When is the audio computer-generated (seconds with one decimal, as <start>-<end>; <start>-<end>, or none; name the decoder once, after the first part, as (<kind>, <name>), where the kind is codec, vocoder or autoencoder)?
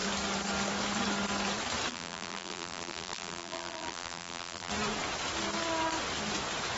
1.9-4.7 (vocoder, BigVGAN v2)